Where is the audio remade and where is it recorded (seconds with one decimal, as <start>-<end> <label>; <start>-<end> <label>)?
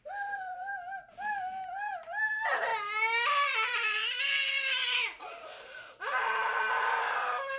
0.0-2.7 remade; 2.7-3.3 recorded; 3.3-4.0 remade; 4.0-5.2 recorded; 5.2-7.6 remade